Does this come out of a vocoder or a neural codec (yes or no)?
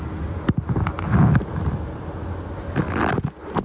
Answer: no